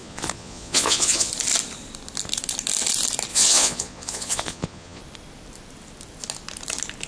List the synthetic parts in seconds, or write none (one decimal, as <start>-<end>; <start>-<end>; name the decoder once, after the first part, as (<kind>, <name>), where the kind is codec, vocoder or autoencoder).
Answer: 0.0-1.3 (vocoder, Vocos); 3.3-5.0